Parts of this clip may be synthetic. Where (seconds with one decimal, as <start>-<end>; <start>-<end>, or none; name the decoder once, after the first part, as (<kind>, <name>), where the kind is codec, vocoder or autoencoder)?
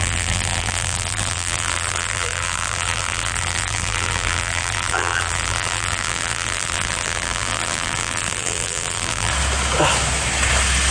0.0-9.3 (vocoder, BigVGAN v2)